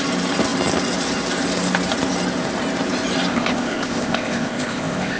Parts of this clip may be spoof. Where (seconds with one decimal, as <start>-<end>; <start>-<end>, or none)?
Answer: 3.3-5.2